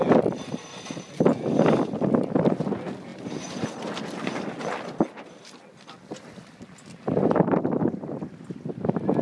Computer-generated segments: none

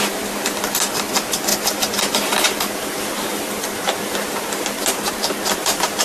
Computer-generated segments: 1.5-5.1 (vocoder, BigVGAN v2)

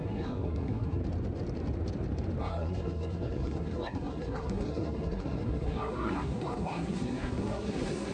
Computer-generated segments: 0.0-1.0 (codec, SNAC); 2.4-8.1